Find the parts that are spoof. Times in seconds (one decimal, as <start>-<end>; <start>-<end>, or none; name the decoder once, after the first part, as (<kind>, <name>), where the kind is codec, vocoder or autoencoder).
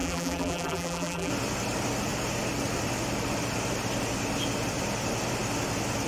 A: 0.0-1.3 (vocoder, BigVGAN v2)